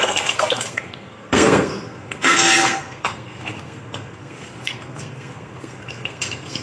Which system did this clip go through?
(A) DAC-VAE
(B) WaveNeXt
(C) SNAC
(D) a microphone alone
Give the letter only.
C